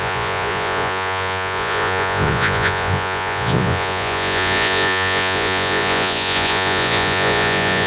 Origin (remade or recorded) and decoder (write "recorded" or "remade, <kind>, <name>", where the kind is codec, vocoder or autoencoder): remade, vocoder, Vocos